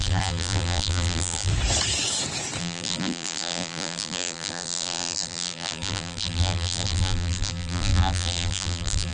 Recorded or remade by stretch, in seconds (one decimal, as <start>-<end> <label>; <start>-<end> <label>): 0.0-1.5 remade; 1.5-2.6 recorded; 2.6-9.1 remade